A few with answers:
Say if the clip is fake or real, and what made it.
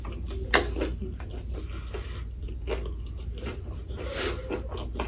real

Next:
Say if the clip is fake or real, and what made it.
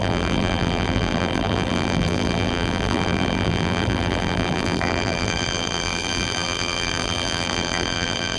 fake, vocoder, BigVGAN v2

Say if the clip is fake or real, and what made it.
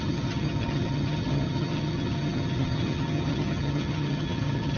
fake, vocoder, HiFi-GAN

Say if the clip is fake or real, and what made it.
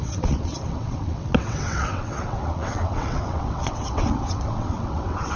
fake, vocoder, WaveNeXt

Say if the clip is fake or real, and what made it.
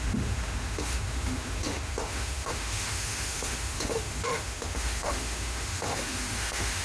fake, autoencoder, DAC-VAE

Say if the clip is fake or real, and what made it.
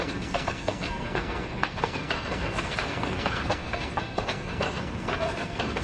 fake, codec, SNAC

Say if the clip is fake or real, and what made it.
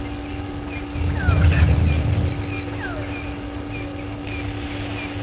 real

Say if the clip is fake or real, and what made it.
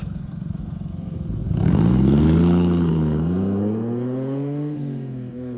fake, codec, SNAC